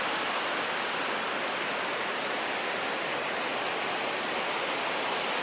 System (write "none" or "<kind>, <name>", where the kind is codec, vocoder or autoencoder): none